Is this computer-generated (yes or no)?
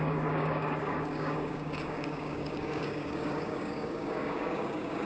yes